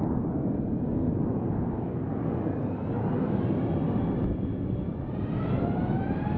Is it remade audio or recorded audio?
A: recorded